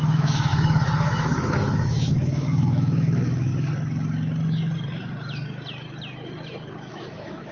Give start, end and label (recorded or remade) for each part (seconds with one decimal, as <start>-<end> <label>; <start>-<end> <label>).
0.0-3.5 remade; 3.5-6.9 recorded; 6.9-7.5 remade